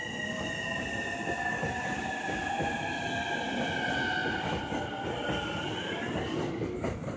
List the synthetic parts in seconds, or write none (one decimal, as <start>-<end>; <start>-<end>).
none